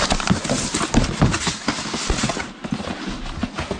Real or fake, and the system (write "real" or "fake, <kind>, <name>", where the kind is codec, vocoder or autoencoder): real